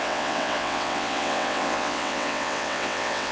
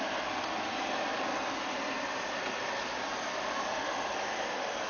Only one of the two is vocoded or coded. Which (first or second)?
first